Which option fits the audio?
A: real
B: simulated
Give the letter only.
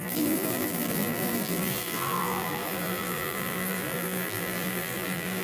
B